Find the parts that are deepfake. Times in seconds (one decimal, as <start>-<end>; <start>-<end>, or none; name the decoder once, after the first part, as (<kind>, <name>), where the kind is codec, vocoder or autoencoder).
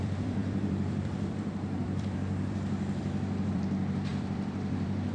0.0-5.1 (vocoder, BigVGAN v2)